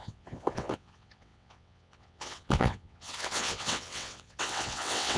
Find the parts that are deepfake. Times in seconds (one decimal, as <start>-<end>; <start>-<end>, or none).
0.0-5.2